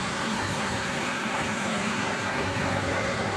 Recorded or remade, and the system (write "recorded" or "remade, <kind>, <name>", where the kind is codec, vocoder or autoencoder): remade, codec, SNAC